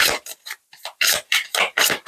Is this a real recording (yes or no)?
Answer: no